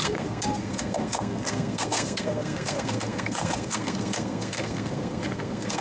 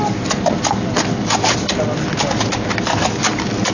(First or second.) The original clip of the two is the second